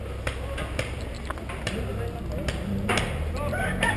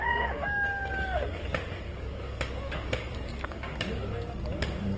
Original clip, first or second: first